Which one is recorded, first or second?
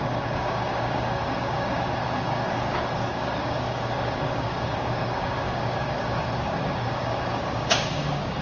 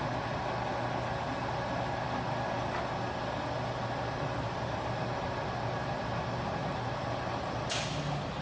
second